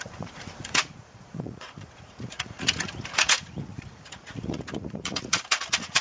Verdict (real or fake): fake